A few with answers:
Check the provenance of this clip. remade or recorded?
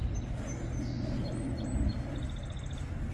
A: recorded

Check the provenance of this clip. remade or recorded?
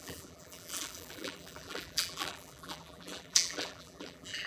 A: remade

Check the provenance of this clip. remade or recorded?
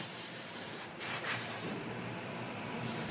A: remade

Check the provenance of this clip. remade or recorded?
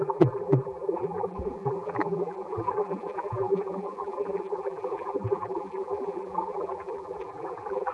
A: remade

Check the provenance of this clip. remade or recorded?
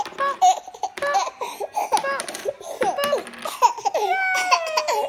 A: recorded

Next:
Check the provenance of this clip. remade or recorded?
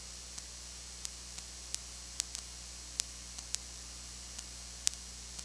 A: recorded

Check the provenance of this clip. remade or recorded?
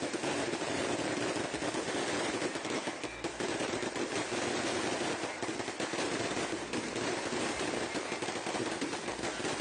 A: remade